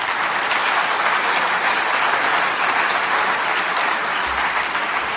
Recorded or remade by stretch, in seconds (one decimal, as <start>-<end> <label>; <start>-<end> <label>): 0.0-5.2 recorded